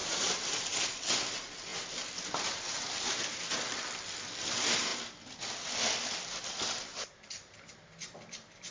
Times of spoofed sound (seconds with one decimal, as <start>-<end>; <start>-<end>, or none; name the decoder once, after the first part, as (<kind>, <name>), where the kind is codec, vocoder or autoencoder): 0.0-0.8 (vocoder, BigVGAN v2)